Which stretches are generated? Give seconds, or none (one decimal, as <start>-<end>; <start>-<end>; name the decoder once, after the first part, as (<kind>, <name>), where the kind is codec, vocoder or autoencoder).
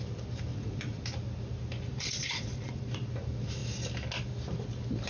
0.5-1.0 (vocoder, Vocos); 1.9-3.1